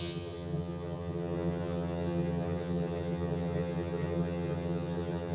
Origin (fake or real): fake